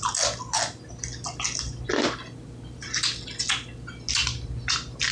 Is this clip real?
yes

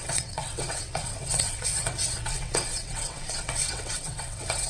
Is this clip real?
no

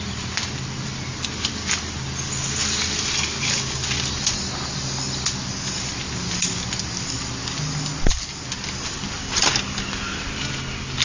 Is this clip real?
yes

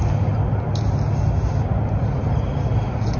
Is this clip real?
yes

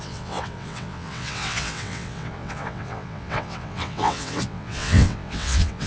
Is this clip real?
no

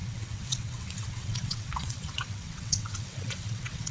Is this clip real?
no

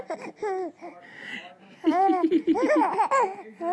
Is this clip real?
yes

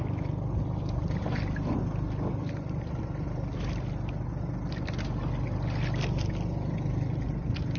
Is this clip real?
yes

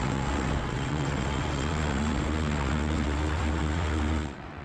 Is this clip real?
no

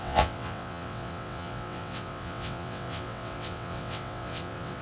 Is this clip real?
no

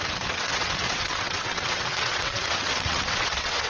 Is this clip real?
no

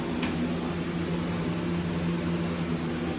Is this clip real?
yes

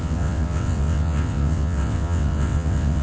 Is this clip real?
no